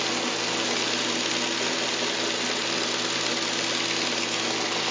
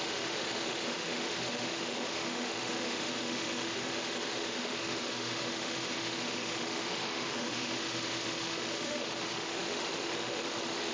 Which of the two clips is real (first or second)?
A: first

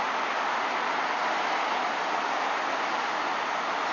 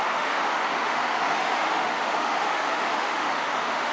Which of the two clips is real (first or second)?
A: first